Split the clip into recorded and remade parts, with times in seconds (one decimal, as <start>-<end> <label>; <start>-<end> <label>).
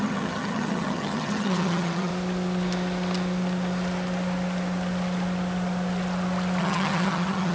0.0-2.1 remade; 2.1-6.6 recorded; 6.6-7.5 remade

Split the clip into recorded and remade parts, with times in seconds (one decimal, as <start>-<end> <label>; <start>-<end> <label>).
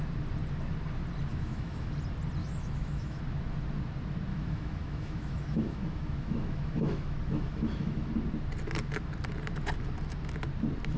0.0-1.3 recorded; 1.3-1.9 remade; 1.9-2.4 recorded; 2.4-3.2 remade; 3.2-4.3 recorded; 4.3-8.1 remade; 8.1-11.0 recorded